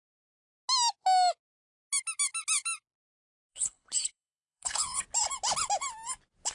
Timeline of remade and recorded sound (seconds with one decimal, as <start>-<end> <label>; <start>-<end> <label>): 0.0-3.5 recorded; 3.5-5.0 remade; 5.0-6.5 recorded